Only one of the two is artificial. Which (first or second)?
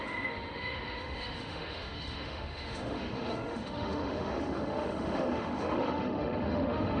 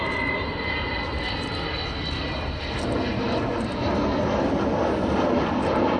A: first